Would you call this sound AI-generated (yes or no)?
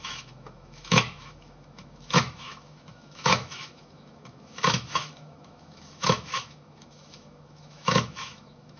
yes